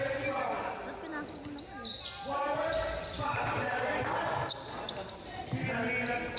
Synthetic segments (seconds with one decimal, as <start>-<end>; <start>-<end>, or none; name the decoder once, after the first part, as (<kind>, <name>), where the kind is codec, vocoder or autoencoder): none